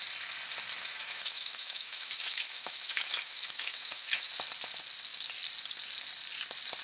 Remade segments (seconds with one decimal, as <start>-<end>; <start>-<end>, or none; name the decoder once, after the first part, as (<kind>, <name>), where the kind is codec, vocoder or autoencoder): 0.9-4.3 (autoencoder, DAC-VAE)